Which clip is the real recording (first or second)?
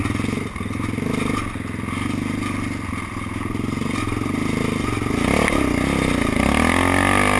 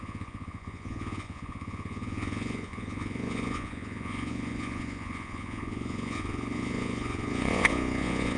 first